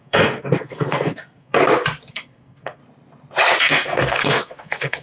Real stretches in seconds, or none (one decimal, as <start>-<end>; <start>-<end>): 1.6-2.1; 2.8-3.6